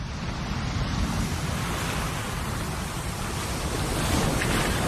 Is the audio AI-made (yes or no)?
no